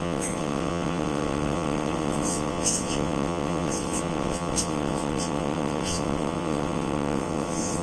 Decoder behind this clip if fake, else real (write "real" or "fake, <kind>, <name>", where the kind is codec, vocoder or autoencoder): fake, vocoder, WaveNeXt